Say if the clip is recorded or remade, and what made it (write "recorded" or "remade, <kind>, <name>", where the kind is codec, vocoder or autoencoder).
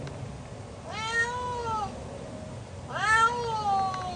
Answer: recorded